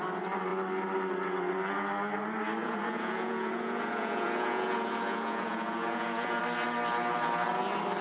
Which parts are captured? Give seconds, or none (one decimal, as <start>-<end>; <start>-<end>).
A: 0.0-2.6; 6.4-8.0